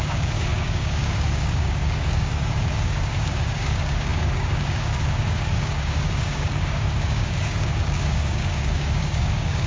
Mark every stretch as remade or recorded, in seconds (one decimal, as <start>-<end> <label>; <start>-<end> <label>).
0.0-9.7 remade